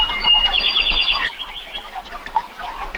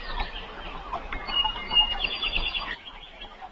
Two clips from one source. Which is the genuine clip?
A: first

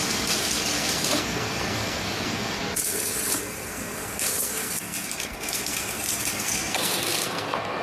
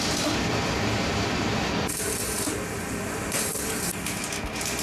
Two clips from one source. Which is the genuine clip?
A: second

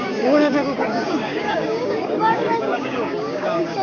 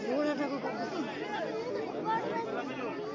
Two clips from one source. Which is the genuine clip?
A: second